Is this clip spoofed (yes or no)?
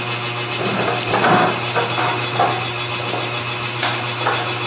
no